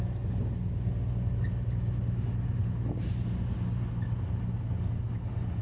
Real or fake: real